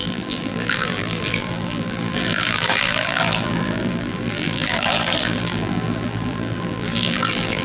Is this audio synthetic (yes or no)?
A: yes